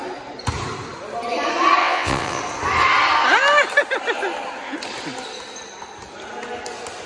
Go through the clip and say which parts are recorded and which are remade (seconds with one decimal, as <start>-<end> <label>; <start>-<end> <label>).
0.0-1.8 recorded; 1.8-2.4 remade; 2.4-7.1 recorded